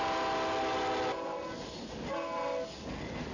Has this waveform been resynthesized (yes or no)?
no